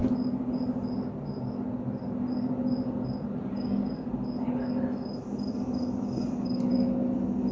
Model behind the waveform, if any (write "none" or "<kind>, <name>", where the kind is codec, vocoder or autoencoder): none